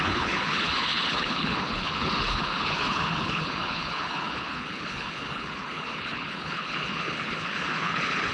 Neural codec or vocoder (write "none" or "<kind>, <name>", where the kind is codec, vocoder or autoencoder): codec, HILCodec